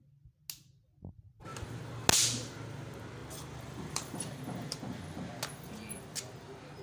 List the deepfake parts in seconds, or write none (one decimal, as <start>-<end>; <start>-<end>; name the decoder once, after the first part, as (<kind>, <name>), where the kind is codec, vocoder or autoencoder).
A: 3.2-5.2 (vocoder, BigVGAN v2)